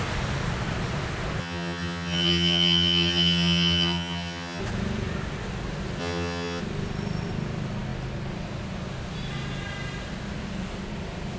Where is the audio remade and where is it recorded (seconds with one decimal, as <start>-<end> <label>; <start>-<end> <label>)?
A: 0.0-1.4 recorded; 1.4-4.6 remade; 4.6-6.0 recorded; 6.0-6.6 remade; 6.6-11.4 recorded